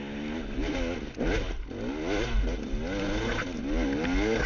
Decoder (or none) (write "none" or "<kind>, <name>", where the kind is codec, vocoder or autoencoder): none